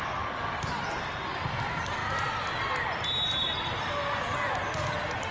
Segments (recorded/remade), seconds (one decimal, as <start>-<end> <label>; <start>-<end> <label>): 0.0-5.3 recorded